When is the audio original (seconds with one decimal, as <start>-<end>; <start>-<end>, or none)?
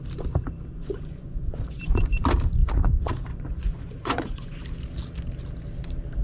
0.0-0.7; 2.0-2.6; 4.6-6.2